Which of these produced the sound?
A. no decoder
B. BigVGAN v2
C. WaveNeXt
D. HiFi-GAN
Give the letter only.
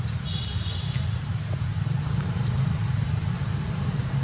B